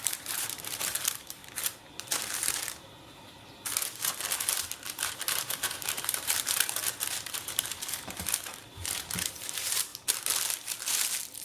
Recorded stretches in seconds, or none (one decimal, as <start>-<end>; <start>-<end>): 1.4-5.1; 6.8-7.3; 9.9-11.4